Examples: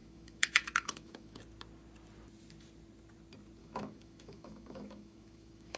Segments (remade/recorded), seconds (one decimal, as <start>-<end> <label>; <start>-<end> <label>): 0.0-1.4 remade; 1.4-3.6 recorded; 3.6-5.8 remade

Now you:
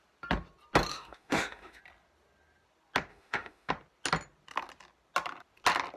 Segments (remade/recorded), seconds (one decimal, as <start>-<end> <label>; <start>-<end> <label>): 0.0-0.9 recorded; 0.9-1.8 remade; 1.8-3.1 recorded; 3.1-3.7 remade; 3.7-6.0 recorded

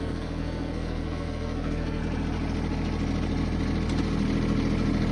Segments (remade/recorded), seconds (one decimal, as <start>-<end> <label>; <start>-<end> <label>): 0.0-2.0 remade; 2.0-5.1 recorded

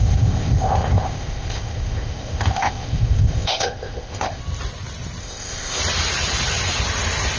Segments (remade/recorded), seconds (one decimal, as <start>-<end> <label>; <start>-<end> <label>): 0.0-4.4 remade; 4.4-5.2 recorded; 5.2-5.8 remade; 5.8-7.4 recorded

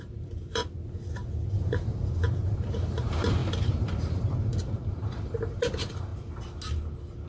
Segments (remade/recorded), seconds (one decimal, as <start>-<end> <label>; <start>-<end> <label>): 0.0-0.6 remade; 0.6-1.5 recorded; 1.5-6.1 remade; 6.1-7.3 recorded

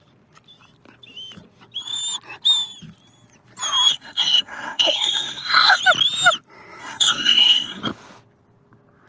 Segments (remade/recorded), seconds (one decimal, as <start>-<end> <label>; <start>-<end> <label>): 0.0-3.9 recorded; 3.9-5.8 remade; 5.8-6.8 recorded; 6.8-7.8 remade; 7.8-9.1 recorded

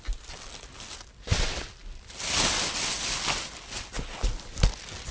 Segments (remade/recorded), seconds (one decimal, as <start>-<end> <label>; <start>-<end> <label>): 0.0-5.1 recorded